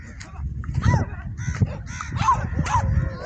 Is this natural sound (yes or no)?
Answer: yes